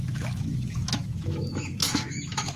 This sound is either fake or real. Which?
fake